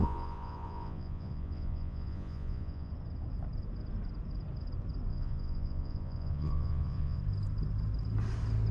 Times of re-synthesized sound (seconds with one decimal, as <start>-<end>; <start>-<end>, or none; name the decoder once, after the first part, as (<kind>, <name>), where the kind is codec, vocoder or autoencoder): 0.0-2.9 (vocoder, Vocos); 5.1-7.2